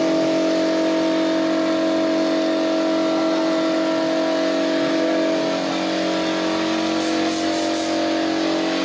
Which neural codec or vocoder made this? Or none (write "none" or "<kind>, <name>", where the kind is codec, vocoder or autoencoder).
none